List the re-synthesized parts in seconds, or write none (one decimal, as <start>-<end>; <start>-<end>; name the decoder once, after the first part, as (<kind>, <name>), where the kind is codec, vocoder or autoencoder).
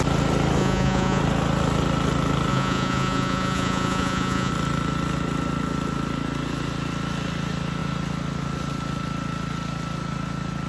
0.6-1.2 (vocoder, Vocos); 2.5-4.5